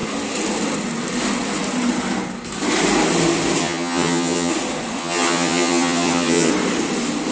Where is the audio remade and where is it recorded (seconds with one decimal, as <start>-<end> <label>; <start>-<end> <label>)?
0.0-3.6 recorded; 3.6-4.5 remade; 4.5-5.0 recorded; 5.0-6.5 remade; 6.5-7.3 recorded